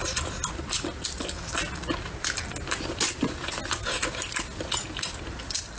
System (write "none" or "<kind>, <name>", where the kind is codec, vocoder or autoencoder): none